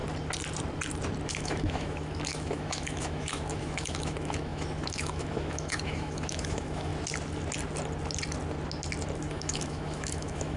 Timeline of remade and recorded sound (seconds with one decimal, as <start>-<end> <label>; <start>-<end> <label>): 0.0-1.3 recorded; 1.3-6.9 remade; 6.9-9.3 recorded; 9.3-10.6 remade